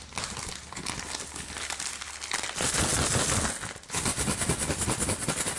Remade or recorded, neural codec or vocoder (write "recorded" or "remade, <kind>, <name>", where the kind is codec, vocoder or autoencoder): recorded